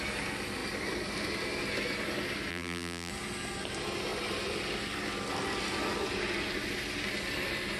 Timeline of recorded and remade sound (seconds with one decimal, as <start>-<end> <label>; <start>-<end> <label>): 0.0-2.5 recorded; 2.5-3.1 remade; 3.1-7.8 recorded

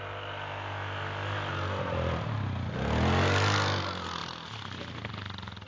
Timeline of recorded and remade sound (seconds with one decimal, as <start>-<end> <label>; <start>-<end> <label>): 0.0-5.7 recorded